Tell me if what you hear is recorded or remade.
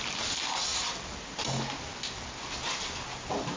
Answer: recorded